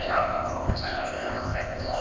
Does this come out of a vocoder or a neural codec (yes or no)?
yes